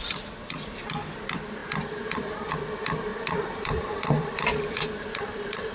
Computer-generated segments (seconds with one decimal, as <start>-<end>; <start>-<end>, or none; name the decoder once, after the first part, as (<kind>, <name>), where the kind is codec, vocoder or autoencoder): 0.0-5.7 (vocoder, BigVGAN v2)

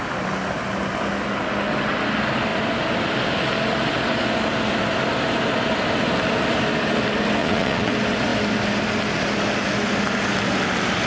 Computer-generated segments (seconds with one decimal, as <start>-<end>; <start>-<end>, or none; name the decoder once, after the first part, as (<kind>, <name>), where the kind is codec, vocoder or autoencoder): 7.4-7.9 (vocoder, Vocos)